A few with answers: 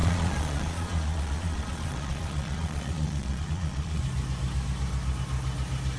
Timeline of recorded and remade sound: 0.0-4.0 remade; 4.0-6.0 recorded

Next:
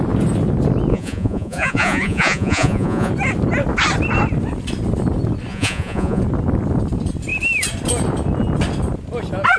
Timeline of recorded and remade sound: 0.0-0.9 recorded; 0.9-3.1 remade; 3.1-5.5 recorded; 5.5-6.2 remade; 6.2-9.6 recorded

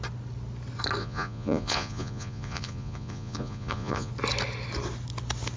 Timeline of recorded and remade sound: 0.0-1.0 recorded; 1.0-4.1 remade; 4.1-5.6 recorded

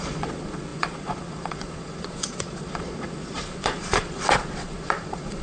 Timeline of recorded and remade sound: 0.0-5.4 remade

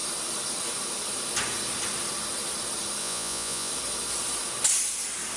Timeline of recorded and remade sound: 0.0-3.0 recorded; 3.0-3.7 remade; 3.7-5.4 recorded

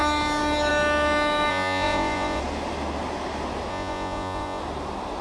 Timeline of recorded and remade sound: 0.0-1.5 recorded; 1.5-2.4 remade; 2.4-3.7 recorded; 3.7-4.6 remade; 4.6-5.2 recorded